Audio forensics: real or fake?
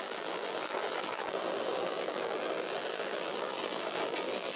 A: fake